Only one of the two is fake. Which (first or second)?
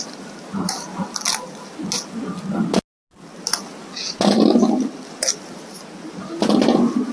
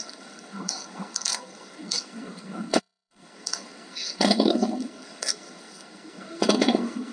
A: second